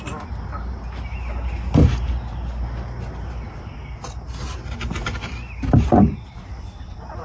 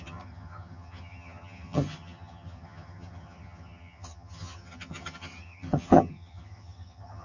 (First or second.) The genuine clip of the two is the first